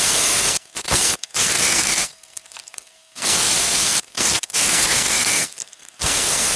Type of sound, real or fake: fake